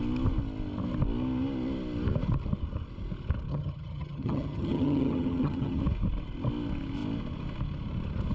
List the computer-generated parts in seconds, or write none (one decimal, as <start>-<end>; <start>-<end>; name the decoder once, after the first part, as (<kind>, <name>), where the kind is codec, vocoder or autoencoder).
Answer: 3.5-5.8 (vocoder, HiFi-GAN)